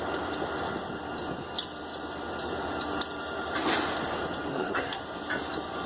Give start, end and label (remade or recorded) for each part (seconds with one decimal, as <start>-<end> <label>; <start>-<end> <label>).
0.0-4.5 recorded; 4.5-5.0 remade; 5.0-5.9 recorded